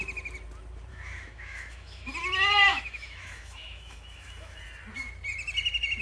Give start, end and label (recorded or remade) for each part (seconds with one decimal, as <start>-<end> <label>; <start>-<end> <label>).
0.0-0.9 recorded; 0.9-2.1 remade; 2.1-2.7 recorded; 2.7-4.6 remade; 4.6-6.0 recorded